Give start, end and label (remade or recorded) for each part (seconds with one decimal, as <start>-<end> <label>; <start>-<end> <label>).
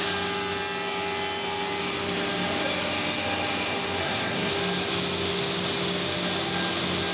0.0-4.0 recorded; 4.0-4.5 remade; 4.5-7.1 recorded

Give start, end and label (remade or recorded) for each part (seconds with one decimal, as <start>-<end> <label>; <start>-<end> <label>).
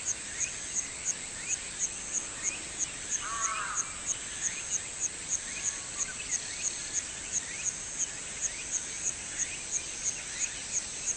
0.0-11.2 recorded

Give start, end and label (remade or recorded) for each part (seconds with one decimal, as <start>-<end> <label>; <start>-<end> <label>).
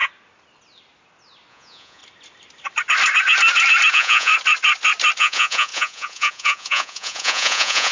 0.0-1.5 recorded; 1.5-2.0 remade; 2.0-3.9 recorded; 3.9-4.3 remade; 4.3-5.2 recorded; 5.2-7.9 remade